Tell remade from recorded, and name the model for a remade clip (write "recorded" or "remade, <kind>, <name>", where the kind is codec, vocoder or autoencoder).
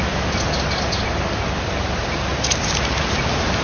recorded